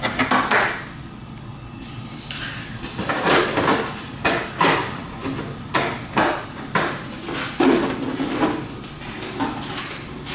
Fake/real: real